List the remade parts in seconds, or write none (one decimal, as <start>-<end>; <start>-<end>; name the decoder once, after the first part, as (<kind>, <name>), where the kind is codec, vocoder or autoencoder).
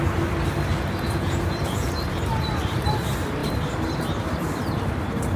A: 0.7-1.9 (vocoder, Vocos)